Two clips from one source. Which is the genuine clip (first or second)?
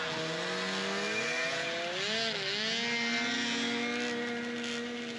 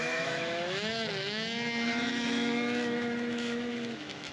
first